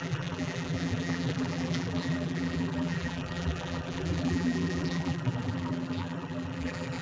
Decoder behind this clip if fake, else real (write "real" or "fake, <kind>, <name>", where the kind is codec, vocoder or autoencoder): fake, vocoder, BigVGAN v2